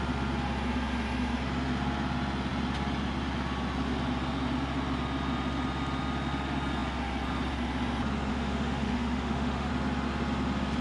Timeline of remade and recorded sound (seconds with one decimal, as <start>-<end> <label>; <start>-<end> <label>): 0.0-8.3 recorded; 8.3-9.7 remade; 9.7-10.8 recorded